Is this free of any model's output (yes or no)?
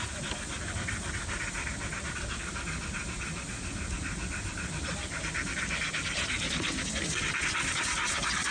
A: yes